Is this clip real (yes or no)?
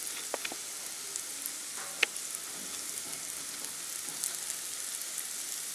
yes